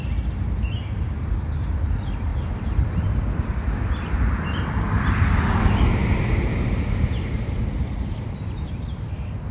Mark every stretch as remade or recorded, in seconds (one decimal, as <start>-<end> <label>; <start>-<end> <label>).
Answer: 0.0-9.5 recorded